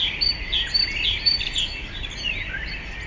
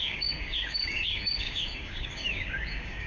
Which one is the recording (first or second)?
first